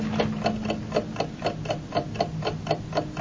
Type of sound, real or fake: real